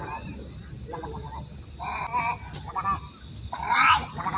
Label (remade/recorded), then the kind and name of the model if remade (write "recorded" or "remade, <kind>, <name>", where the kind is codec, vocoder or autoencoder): recorded